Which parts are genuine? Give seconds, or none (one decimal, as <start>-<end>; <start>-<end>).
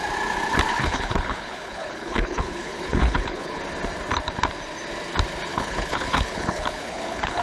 0.0-0.7; 3.6-5.5